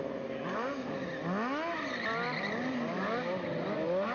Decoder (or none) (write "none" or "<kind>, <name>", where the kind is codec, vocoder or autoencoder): none